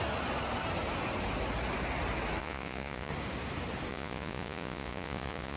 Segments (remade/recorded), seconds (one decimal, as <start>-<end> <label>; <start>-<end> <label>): 0.0-2.4 recorded; 2.4-3.1 remade; 3.1-3.9 recorded; 3.9-5.6 remade